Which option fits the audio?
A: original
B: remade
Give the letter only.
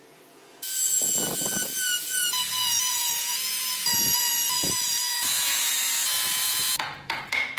B